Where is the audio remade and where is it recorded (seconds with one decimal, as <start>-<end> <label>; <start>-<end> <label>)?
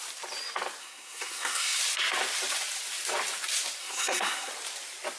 0.0-0.8 recorded; 0.8-1.8 remade; 1.8-3.8 recorded; 3.8-4.5 remade; 4.5-5.2 recorded